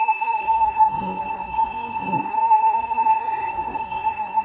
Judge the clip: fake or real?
fake